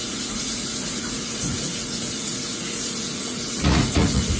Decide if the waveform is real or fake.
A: fake